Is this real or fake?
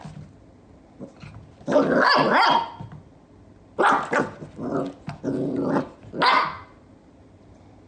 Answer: real